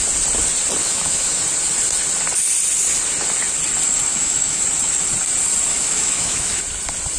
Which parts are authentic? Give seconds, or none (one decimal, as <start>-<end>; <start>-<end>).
0.0-0.8; 1.4-4.1; 4.6-5.7; 6.6-7.2